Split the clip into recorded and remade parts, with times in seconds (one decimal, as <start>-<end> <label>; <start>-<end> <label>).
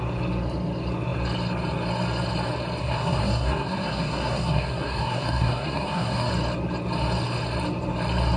0.0-2.8 recorded; 2.8-6.3 remade; 6.3-8.4 recorded